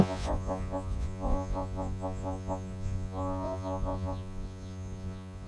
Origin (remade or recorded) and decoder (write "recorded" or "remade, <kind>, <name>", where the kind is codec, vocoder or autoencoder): remade, vocoder, Vocos